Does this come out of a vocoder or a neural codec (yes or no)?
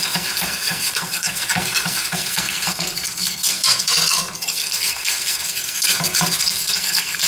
yes